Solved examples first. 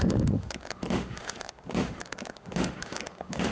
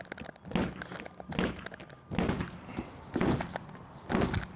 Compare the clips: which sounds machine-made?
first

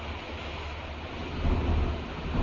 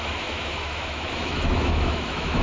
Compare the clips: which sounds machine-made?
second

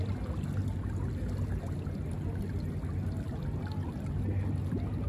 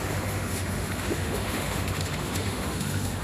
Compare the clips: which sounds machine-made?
second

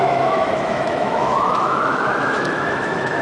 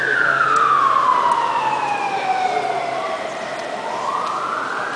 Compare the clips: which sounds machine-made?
first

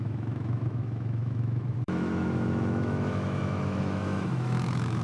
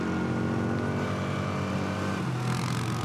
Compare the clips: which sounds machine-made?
first